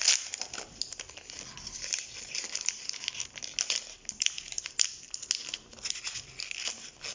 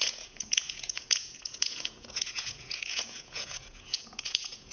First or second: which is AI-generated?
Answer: second